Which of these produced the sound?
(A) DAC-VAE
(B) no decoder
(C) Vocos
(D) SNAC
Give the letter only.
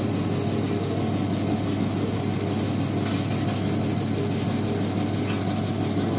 B